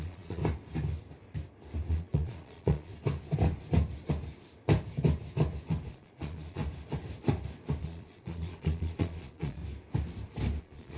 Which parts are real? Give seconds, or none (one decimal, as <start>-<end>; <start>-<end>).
0.4-1.9; 2.9-5.9; 6.6-7.8; 9.6-10.6